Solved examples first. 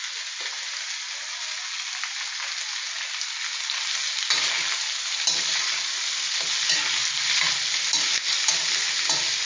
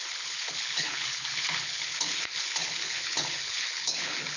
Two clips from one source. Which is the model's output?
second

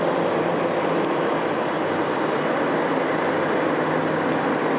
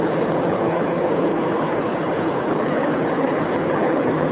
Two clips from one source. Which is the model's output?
second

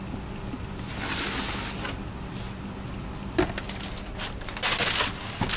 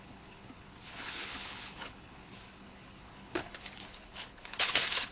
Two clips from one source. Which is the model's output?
second